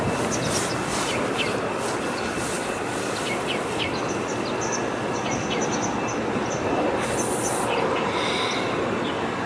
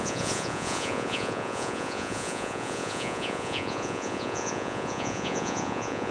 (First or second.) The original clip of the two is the first